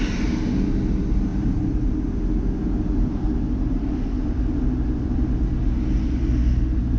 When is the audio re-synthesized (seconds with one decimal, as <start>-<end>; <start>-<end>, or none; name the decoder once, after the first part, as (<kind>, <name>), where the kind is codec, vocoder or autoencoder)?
none